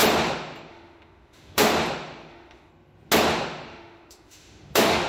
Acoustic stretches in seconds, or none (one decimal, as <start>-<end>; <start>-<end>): 0.0-0.7; 1.7-2.3; 2.7-3.7